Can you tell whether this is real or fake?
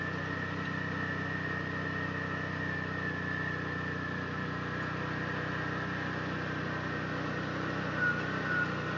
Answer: real